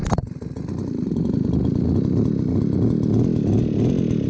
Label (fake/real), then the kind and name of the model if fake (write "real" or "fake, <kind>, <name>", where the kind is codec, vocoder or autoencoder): real